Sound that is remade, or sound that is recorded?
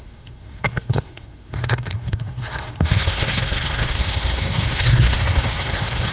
remade